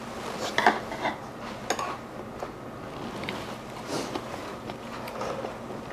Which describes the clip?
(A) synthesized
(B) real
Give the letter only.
B